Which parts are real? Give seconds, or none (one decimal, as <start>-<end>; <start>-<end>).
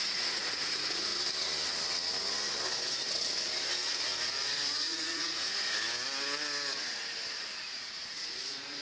1.1-4.3; 5.5-7.6